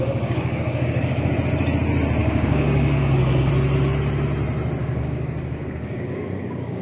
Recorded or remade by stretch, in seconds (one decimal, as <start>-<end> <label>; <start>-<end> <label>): 0.0-1.3 remade; 1.3-2.2 recorded; 2.2-3.5 remade; 3.5-4.8 recorded; 4.8-6.8 remade